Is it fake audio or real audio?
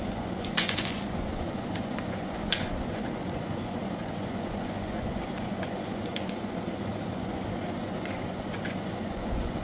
fake